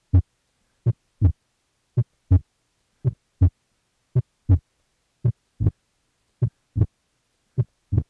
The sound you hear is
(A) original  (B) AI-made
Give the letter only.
A